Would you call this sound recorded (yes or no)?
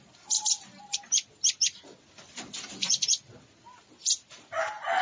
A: yes